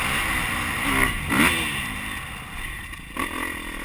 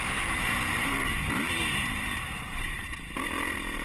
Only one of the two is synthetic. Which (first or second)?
second